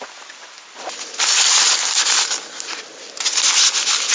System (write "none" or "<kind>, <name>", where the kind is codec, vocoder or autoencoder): none